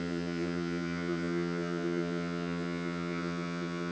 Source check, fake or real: fake